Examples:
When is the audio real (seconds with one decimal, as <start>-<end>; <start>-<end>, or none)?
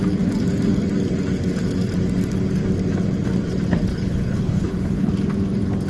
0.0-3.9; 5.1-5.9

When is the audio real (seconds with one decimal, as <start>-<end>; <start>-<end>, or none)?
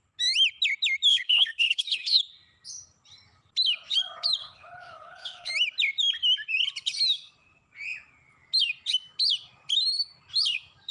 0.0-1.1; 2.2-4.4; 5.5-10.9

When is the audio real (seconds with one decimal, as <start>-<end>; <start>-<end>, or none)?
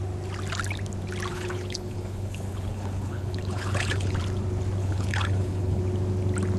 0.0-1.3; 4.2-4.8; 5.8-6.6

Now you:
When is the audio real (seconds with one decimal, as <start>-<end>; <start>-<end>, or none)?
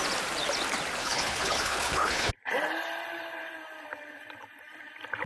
0.0-1.0; 2.3-5.3